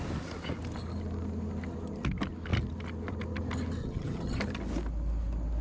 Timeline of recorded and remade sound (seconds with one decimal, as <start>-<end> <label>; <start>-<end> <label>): 0.0-3.8 recorded; 3.8-4.4 remade; 4.4-5.6 recorded